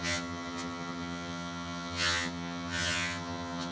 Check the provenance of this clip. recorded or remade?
remade